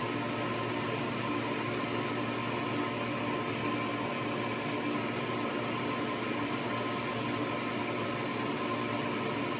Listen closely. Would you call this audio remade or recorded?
recorded